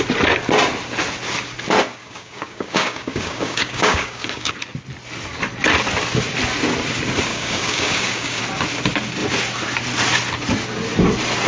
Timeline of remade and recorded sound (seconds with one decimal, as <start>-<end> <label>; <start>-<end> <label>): 0.0-2.0 recorded; 2.0-4.5 remade; 4.5-7.3 recorded; 7.3-8.4 remade; 8.4-11.5 recorded